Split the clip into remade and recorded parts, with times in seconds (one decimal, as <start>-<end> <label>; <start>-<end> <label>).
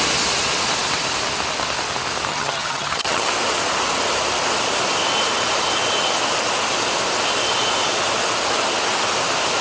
0.0-2.3 recorded; 2.3-3.3 remade; 3.3-9.6 recorded